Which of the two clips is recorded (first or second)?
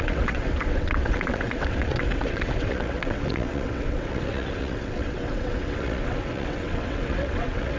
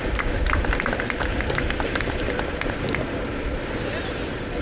second